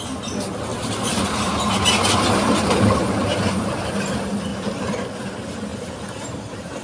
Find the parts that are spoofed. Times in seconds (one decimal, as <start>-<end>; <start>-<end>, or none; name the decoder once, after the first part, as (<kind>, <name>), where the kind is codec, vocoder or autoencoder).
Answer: 0.7-3.9 (vocoder, BigVGAN v2); 4.5-5.3; 5.7-6.8